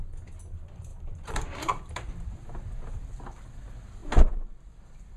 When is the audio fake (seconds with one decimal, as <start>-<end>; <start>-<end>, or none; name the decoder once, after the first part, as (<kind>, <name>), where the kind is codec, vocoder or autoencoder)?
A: 0.9-1.9 (vocoder, BigVGAN v2)